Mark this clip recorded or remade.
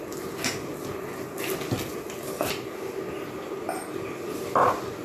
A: recorded